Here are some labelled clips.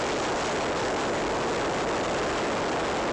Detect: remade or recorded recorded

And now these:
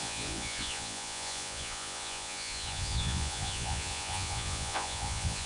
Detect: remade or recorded remade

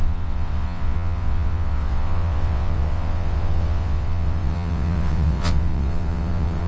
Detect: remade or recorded remade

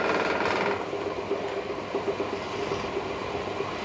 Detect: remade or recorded recorded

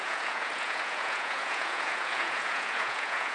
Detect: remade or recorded remade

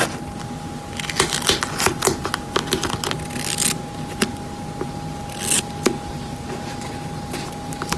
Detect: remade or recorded recorded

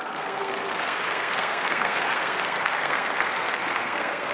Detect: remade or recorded remade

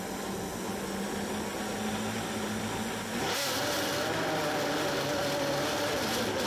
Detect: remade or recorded recorded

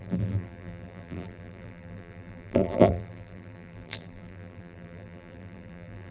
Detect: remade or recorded remade